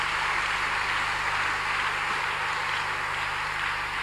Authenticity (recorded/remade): recorded